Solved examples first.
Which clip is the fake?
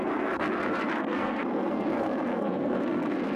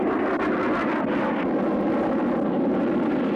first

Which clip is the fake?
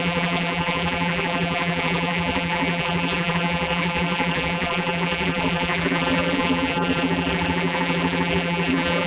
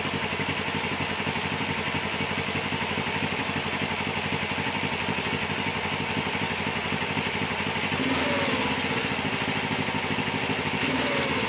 first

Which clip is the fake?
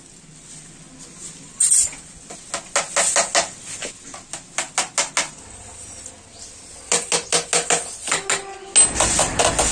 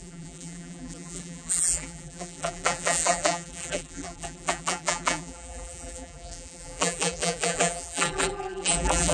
second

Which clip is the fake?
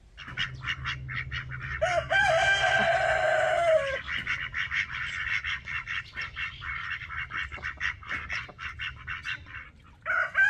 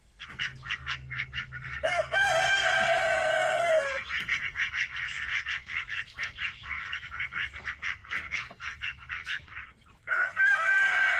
second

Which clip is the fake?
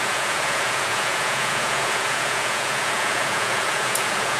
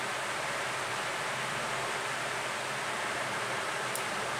first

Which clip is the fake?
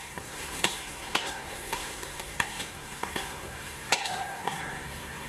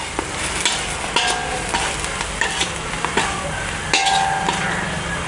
first